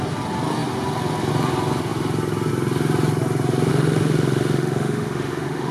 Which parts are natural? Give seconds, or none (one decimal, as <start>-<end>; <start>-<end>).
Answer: 0.0-3.7